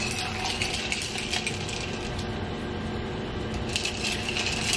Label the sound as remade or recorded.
recorded